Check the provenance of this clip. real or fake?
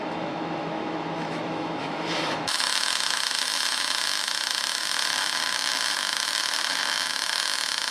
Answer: fake